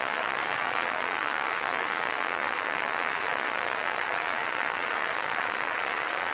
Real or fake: fake